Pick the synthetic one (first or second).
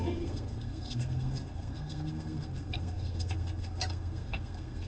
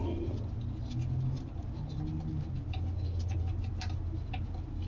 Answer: first